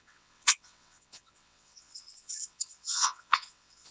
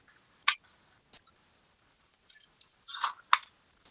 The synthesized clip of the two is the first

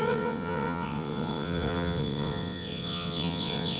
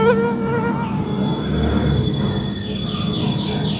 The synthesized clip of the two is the first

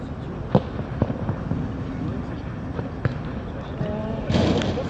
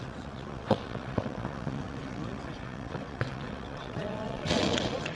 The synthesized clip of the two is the second